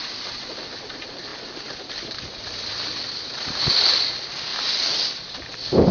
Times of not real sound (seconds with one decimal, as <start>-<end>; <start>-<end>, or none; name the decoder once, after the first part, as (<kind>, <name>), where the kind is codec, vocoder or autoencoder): none

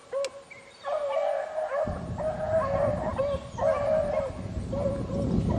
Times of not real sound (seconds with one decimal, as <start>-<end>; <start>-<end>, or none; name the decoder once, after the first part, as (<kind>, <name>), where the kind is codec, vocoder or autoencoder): none